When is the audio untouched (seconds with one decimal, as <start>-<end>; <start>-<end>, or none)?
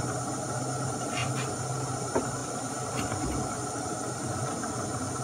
0.0-5.2